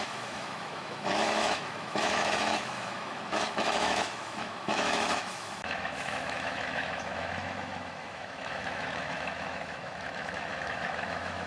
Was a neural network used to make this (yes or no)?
yes